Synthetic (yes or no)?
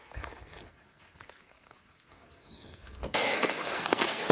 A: yes